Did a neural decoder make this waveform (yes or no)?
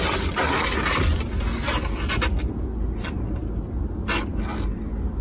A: no